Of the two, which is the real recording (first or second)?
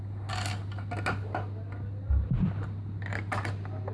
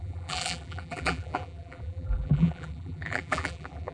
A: first